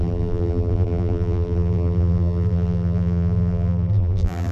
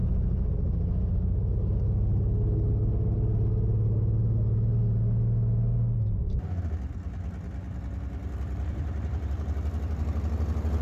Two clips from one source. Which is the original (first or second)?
second